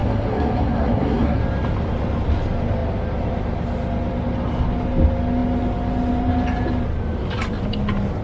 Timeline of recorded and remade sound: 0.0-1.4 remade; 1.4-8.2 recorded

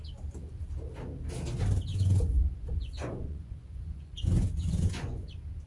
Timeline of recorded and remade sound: 0.0-1.9 recorded; 1.9-5.3 remade; 5.3-5.7 recorded

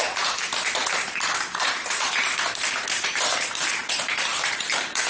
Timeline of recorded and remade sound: 0.0-5.1 remade

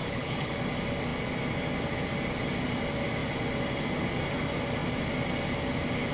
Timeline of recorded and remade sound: 0.0-0.5 remade; 0.5-6.1 recorded

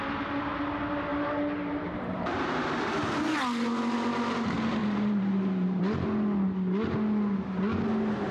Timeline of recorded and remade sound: 0.0-1.1 recorded; 1.1-2.9 remade; 2.9-4.8 recorded; 4.8-5.8 remade; 5.8-8.3 recorded

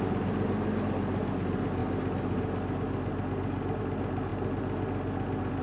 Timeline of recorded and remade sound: 0.0-5.6 recorded